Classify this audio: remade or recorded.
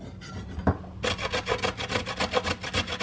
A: recorded